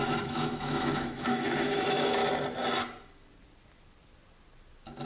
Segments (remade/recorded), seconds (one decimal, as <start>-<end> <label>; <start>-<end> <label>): 0.0-2.2 remade; 2.2-5.1 recorded